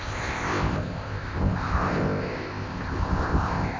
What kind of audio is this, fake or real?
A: fake